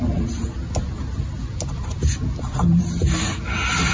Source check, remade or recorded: recorded